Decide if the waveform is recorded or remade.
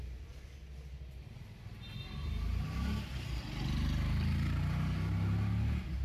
recorded